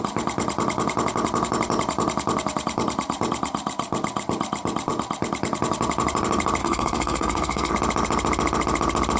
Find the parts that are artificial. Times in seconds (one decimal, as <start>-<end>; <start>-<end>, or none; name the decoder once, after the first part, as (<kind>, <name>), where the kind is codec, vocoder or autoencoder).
6.6-7.7 (codec, SNAC)